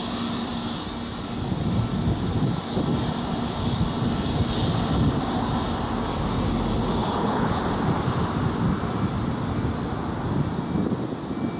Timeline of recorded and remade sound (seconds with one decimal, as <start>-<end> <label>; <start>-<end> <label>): 0.0-7.0 recorded; 7.0-7.6 remade; 7.6-11.6 recorded